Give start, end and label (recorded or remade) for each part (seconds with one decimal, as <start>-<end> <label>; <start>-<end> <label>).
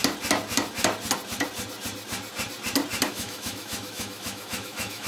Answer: 0.0-3.1 recorded; 3.1-5.1 remade